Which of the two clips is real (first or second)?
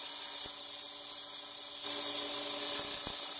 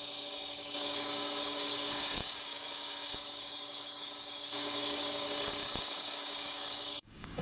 first